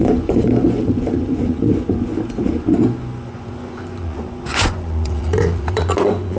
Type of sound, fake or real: fake